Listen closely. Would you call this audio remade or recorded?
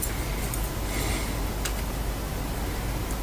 recorded